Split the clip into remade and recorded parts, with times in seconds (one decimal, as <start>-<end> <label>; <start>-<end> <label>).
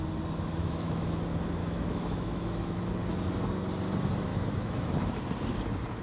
0.0-0.6 recorded; 0.6-1.2 remade; 1.2-1.6 recorded; 1.6-2.9 remade; 2.9-4.3 recorded; 4.3-4.9 remade; 4.9-6.0 recorded